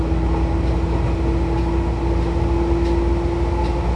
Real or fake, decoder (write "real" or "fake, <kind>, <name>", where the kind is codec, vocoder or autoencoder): real